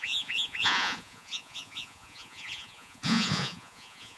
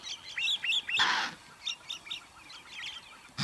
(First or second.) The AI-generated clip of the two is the first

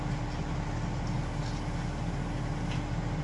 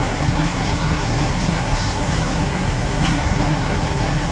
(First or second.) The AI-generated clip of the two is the second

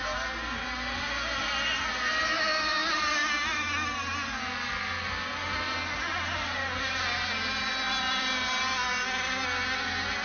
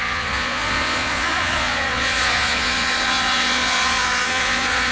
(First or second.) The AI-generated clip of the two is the second